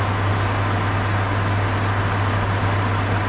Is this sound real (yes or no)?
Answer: yes